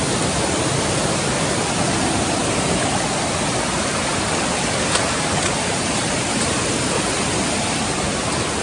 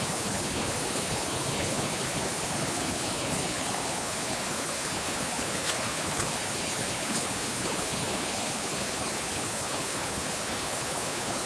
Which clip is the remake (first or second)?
second